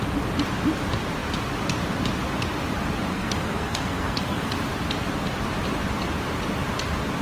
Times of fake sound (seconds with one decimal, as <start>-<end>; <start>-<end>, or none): 3.1-4.5